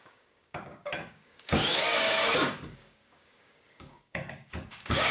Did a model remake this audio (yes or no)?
yes